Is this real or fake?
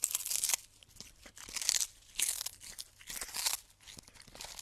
real